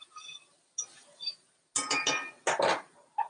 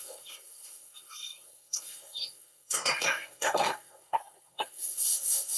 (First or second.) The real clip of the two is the first